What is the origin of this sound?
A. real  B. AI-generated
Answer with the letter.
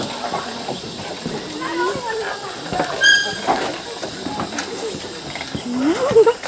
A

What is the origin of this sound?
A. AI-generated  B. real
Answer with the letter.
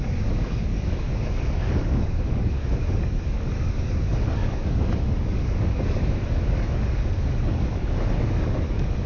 A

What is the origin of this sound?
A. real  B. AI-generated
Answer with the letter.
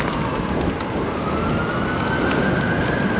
A